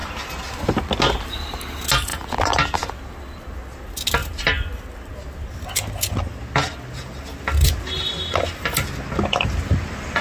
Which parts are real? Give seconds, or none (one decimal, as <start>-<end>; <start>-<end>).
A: 0.0-4.2; 4.7-10.2